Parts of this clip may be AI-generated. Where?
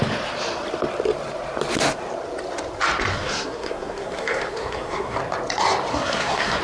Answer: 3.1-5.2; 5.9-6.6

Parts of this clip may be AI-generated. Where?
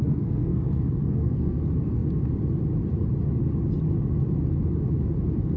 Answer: 0.0-1.6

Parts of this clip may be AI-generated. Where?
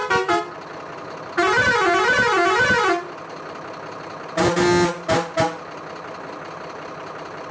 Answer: none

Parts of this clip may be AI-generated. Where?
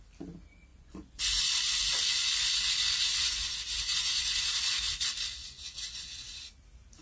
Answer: 0.7-1.4; 3.1-4.9; 5.4-6.5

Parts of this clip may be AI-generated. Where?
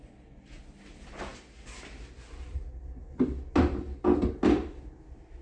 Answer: none